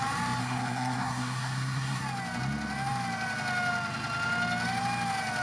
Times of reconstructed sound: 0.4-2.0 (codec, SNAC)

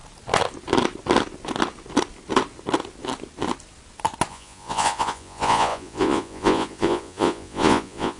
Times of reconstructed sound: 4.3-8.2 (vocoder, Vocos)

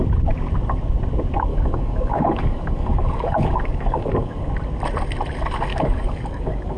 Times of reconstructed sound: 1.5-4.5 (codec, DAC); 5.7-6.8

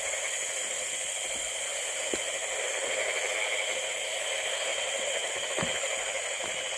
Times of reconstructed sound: 4.7-5.3 (vocoder, WaveNeXt)

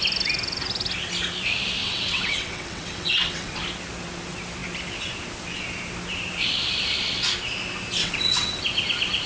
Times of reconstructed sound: 1.8-3.6 (vocoder, WaveNeXt); 8.0-8.6